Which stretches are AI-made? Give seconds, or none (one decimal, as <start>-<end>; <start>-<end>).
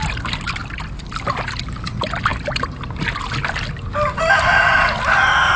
none